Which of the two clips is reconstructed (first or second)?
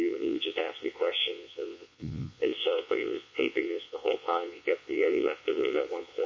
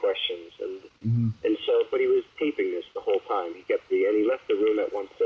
first